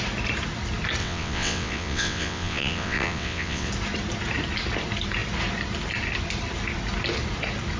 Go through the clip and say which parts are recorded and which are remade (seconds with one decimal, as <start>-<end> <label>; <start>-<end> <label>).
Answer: 0.0-1.0 recorded; 1.0-3.7 remade; 3.7-7.8 recorded